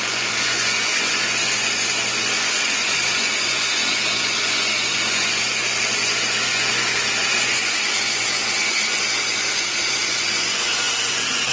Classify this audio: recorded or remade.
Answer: remade